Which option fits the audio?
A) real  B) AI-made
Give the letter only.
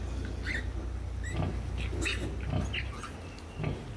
A